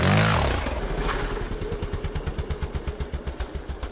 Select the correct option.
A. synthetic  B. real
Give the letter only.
B